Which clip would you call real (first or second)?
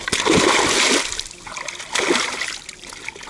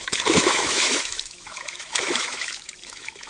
first